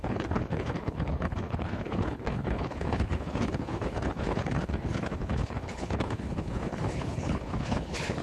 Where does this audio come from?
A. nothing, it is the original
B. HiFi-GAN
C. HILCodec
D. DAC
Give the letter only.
C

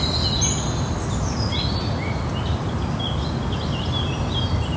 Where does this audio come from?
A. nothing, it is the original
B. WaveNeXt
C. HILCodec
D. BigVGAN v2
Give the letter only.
A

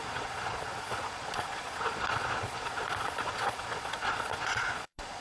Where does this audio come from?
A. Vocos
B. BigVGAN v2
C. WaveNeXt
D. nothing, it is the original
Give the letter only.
A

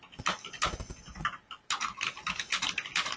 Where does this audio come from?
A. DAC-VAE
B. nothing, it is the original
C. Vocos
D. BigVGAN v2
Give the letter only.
B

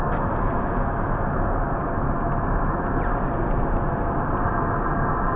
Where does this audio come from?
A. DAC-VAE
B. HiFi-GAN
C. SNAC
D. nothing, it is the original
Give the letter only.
D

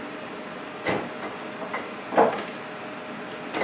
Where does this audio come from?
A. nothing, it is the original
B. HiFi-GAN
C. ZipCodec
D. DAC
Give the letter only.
A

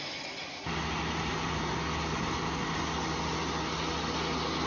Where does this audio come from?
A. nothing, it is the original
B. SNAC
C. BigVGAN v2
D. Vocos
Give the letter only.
A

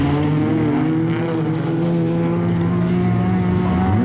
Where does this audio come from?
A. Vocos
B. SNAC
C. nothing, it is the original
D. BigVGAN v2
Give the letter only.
C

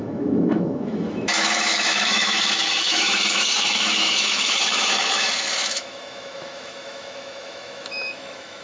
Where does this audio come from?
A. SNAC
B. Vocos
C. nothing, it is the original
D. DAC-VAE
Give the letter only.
D